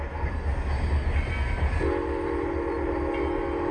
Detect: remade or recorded recorded